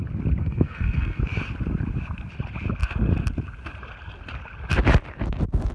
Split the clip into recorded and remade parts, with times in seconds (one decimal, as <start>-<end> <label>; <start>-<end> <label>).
0.0-0.4 recorded; 0.4-1.2 remade; 1.2-5.7 recorded